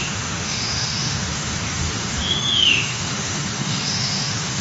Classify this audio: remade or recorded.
remade